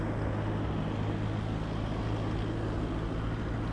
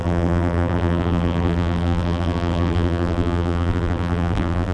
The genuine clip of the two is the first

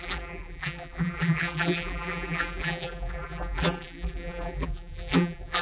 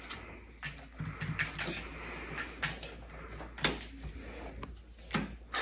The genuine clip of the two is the second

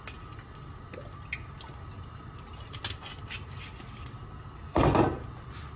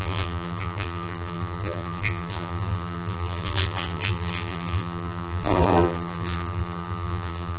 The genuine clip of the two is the first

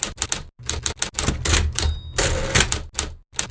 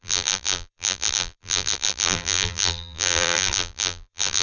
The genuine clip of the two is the first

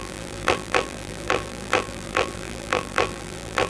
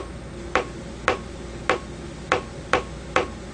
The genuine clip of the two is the second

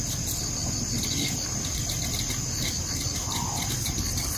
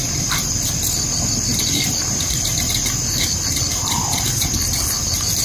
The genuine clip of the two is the first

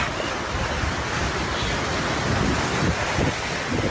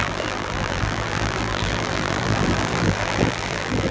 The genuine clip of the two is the first